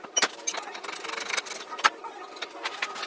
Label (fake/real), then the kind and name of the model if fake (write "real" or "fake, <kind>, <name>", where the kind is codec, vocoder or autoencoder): real